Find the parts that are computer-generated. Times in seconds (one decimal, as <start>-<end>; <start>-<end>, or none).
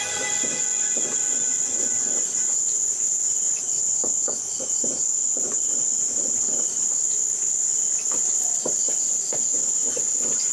0.0-5.9; 8.9-10.5